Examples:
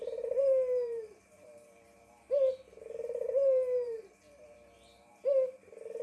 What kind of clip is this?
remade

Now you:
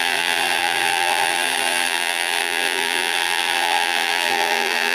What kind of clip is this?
remade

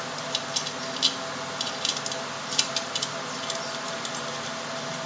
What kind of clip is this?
recorded